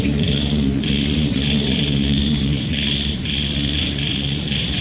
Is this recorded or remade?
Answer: remade